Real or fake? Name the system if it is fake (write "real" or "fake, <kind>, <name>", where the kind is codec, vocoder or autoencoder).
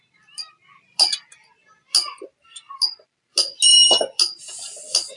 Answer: real